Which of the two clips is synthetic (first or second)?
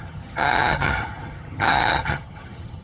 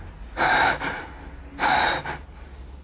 first